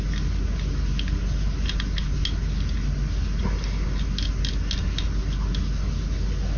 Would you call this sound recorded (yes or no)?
yes